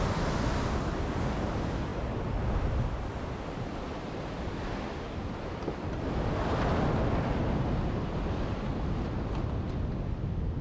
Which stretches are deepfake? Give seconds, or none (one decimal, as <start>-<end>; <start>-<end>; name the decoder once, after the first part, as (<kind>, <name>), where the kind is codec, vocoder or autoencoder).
none